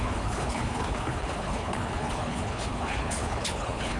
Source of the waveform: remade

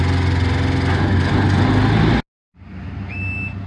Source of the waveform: recorded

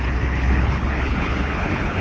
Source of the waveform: remade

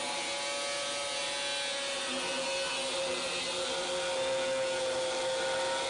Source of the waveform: recorded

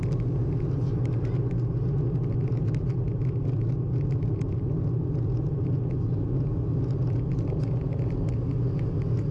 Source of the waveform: recorded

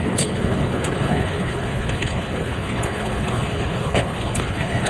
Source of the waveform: remade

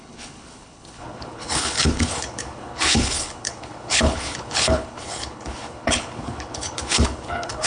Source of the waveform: remade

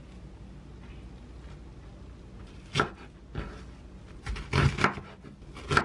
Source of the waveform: recorded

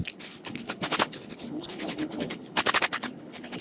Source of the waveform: remade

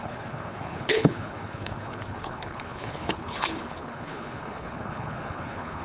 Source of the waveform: remade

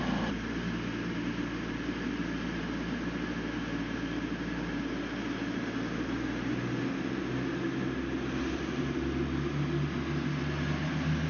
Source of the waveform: recorded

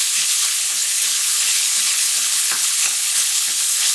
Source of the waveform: remade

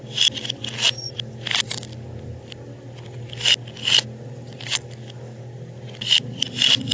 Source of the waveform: recorded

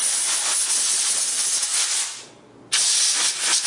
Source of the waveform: recorded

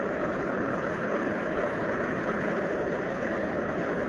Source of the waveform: remade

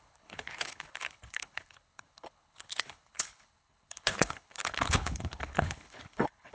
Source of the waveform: remade